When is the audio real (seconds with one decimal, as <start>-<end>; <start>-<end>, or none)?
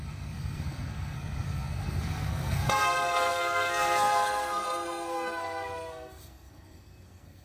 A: none